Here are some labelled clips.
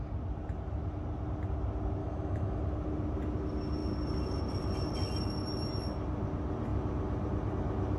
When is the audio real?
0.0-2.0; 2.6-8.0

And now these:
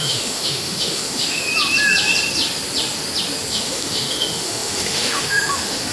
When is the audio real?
1.5-3.5

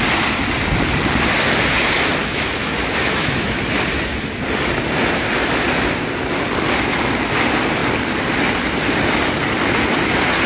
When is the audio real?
0.0-2.2; 3.6-10.5

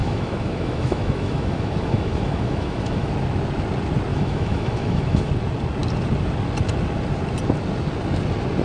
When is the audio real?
3.1-4.1; 5.3-8.6

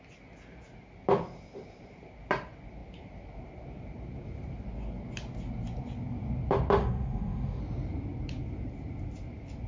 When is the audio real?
0.0-6.8; 7.6-9.7

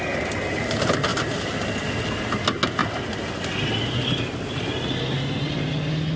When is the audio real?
0.0-6.2